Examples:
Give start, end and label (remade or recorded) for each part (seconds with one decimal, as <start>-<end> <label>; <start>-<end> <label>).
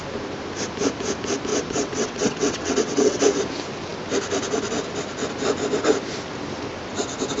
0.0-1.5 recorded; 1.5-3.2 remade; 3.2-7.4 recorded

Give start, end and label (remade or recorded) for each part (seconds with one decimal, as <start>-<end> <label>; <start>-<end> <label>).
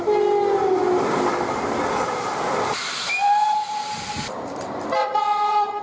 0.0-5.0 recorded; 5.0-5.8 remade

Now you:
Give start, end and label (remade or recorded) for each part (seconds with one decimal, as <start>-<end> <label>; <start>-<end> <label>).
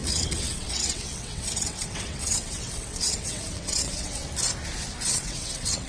0.0-4.2 remade; 4.2-5.1 recorded; 5.1-5.9 remade